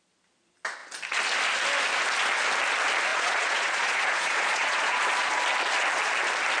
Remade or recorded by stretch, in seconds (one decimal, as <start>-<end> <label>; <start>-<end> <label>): 0.0-3.1 recorded; 3.1-5.0 remade; 5.0-6.6 recorded